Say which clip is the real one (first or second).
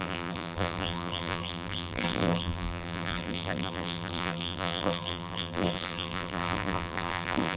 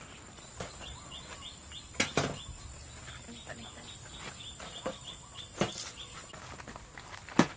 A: second